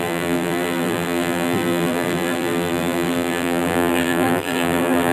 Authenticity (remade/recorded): remade